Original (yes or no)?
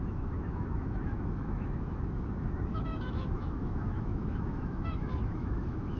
no